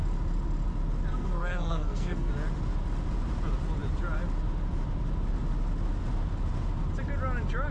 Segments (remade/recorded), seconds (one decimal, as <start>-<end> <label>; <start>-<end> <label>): 0.0-1.1 recorded; 1.1-2.3 remade; 2.3-7.7 recorded